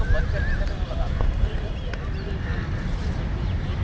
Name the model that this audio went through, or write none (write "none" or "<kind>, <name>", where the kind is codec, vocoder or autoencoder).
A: none